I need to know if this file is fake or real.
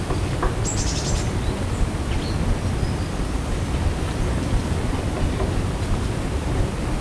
real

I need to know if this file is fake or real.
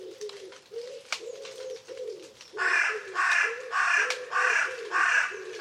real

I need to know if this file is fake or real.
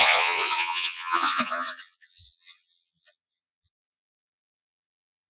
fake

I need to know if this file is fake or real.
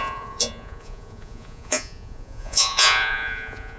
fake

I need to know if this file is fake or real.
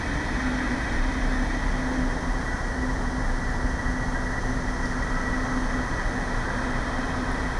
real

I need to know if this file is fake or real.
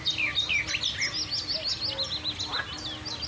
real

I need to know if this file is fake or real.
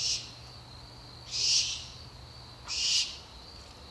real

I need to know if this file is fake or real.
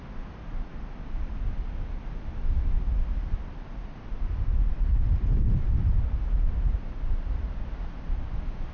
real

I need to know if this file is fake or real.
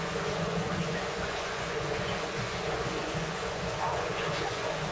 fake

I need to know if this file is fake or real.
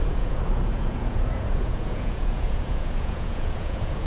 fake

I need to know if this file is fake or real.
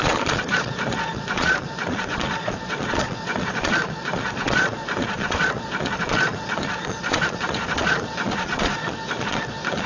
fake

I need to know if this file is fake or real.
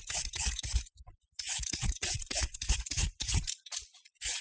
fake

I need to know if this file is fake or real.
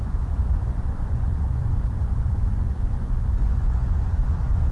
fake